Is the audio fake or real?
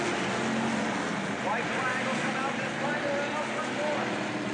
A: real